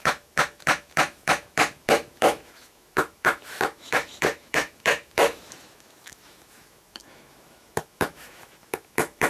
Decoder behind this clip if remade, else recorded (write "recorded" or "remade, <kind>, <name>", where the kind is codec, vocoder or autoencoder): remade, autoencoder, DAC-VAE